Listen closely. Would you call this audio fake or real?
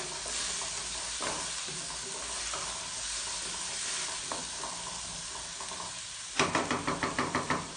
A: real